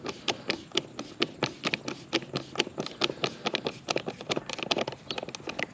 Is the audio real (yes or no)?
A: yes